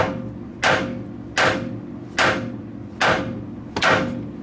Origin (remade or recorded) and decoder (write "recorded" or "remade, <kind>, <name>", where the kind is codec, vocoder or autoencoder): recorded